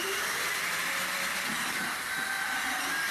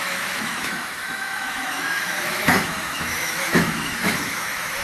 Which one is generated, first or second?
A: second